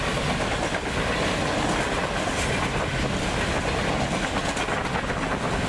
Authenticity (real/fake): real